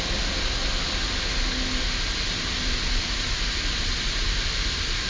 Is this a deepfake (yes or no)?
no